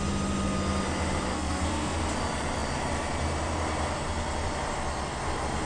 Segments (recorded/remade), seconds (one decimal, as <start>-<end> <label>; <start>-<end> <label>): 0.0-1.3 recorded; 1.3-2.0 remade; 2.0-5.7 recorded